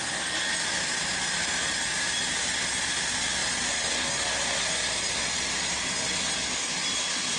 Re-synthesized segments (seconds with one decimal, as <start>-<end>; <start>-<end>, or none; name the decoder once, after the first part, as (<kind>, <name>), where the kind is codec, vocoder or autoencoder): none